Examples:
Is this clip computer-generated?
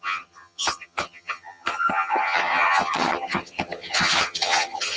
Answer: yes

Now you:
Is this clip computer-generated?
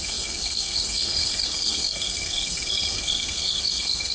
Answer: yes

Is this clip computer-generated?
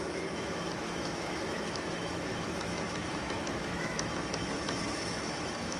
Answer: yes